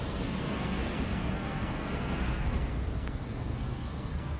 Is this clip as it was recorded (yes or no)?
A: no